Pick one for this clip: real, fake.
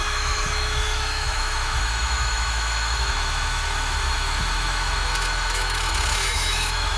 fake